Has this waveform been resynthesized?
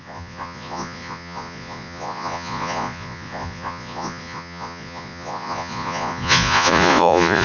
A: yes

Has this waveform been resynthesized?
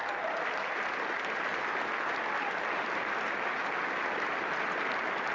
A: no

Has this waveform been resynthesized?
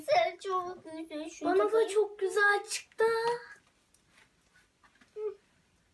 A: no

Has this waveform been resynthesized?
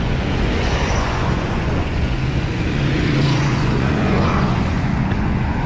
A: yes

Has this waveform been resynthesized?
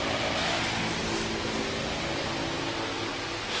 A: no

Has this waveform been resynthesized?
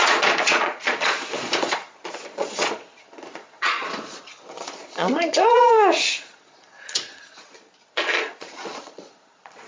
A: yes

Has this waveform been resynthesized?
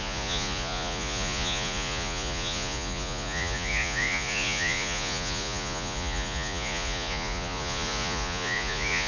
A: yes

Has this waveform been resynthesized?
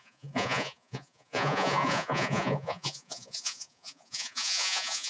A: yes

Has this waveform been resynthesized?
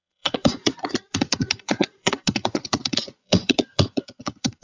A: yes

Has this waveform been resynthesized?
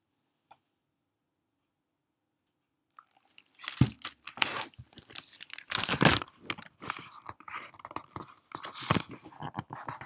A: no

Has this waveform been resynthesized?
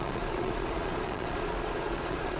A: yes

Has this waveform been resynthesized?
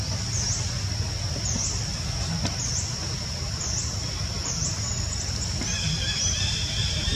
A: no